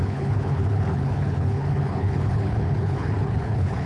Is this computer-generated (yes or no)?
yes